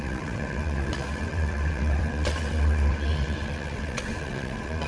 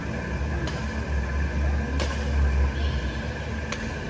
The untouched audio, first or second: second